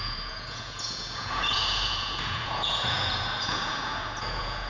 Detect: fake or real fake